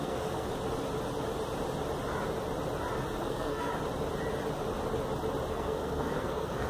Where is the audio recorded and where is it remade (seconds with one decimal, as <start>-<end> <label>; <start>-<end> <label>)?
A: 0.0-0.5 remade; 0.5-3.2 recorded; 3.2-3.7 remade; 3.7-5.5 recorded; 5.5-6.7 remade